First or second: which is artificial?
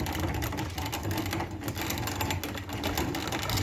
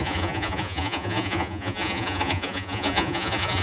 second